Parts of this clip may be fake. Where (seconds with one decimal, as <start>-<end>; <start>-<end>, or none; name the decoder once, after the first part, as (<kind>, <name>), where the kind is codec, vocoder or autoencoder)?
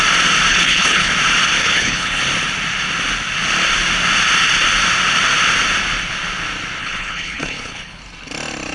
0.5-1.1 (codec, HILCodec); 1.6-2.2; 6.8-8.0